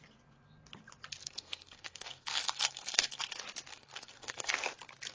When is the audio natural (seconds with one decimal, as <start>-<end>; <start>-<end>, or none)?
0.0-1.2; 3.2-3.7; 4.5-5.1